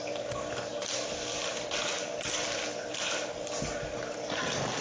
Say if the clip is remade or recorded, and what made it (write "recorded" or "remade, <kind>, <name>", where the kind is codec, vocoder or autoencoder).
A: recorded